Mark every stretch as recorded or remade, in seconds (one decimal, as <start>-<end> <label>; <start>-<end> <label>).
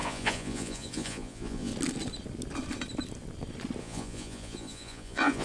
0.0-1.7 remade; 1.7-3.8 recorded; 3.8-5.4 remade